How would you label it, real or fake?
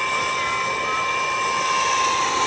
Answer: real